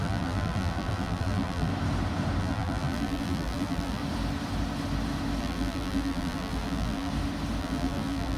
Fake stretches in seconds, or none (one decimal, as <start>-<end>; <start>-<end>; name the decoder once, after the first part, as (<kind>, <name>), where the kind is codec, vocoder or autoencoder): 0.0-1.7 (vocoder, BigVGAN v2); 2.4-4.0; 5.4-7.1; 7.6-8.4